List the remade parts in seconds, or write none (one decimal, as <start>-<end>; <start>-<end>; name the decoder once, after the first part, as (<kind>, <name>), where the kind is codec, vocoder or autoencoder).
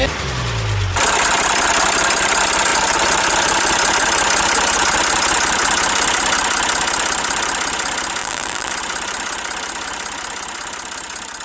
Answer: 8.2-8.7 (vocoder, BigVGAN v2)